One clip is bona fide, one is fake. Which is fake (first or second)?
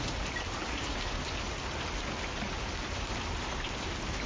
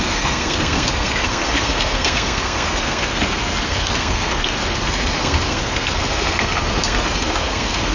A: second